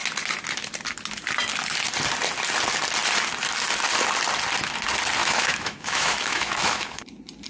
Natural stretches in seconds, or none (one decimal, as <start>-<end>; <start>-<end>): 0.0-5.2; 7.0-7.5